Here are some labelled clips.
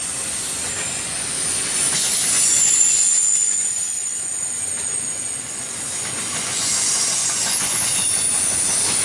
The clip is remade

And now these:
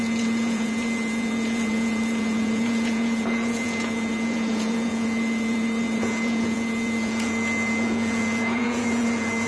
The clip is remade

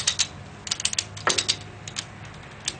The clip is recorded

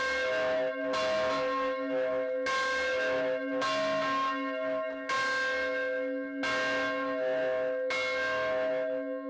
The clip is recorded